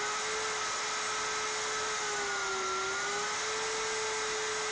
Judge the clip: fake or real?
real